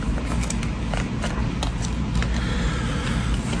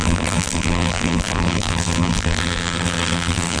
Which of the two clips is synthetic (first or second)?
second